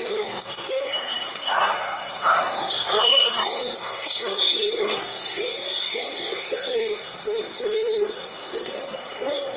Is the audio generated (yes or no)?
yes